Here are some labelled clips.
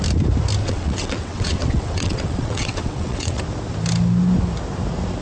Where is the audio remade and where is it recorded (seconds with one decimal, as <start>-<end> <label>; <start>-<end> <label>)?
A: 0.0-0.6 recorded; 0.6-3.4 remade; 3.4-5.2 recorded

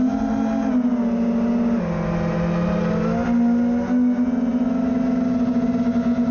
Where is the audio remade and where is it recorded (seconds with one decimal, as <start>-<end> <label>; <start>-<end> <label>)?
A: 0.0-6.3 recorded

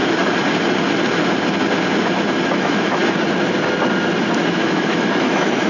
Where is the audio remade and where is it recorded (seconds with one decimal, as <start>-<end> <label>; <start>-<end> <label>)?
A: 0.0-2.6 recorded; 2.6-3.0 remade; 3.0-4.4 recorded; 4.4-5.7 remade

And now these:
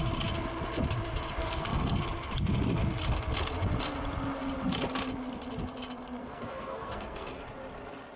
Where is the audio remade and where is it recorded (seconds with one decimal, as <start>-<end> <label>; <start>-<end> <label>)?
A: 0.0-1.4 recorded; 1.4-2.0 remade; 2.0-6.2 recorded; 6.2-7.4 remade; 7.4-8.2 recorded

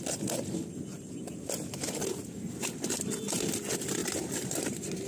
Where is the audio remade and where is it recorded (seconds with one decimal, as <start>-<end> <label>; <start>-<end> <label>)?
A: 0.0-0.9 recorded; 0.9-2.0 remade; 2.0-4.0 recorded; 4.0-5.1 remade

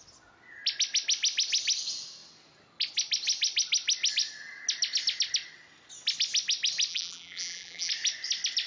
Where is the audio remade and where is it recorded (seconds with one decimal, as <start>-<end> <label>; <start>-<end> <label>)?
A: 0.0-6.9 recorded; 6.9-7.9 remade; 7.9-8.7 recorded